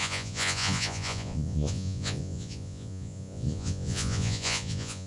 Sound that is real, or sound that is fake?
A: fake